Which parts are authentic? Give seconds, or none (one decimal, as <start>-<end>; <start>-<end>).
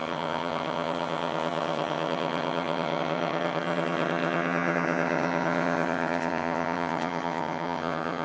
none